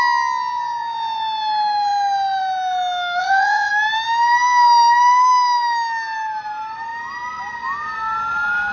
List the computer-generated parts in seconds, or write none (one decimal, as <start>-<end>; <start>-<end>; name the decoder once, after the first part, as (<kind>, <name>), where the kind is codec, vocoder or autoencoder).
3.2-3.7 (vocoder, WaveNeXt)